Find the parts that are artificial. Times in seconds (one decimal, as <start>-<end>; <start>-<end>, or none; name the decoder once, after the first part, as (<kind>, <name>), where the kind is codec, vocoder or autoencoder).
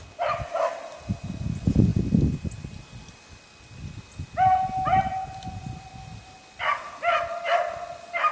none